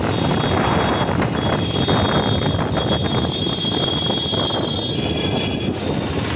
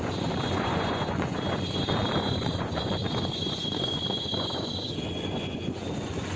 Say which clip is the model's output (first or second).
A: second